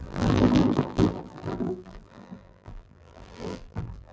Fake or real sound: fake